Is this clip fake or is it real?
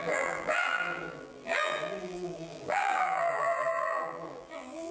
fake